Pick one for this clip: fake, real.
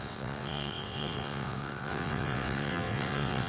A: fake